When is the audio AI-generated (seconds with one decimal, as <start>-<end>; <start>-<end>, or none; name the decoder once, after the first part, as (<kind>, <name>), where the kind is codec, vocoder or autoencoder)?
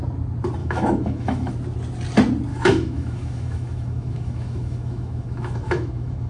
0.6-1.5 (autoencoder, DAC-VAE); 2.5-6.3